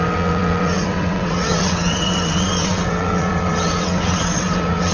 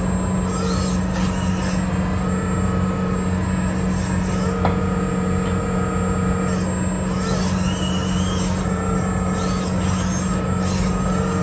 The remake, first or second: first